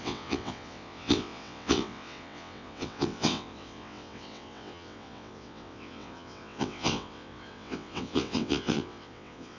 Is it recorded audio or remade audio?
remade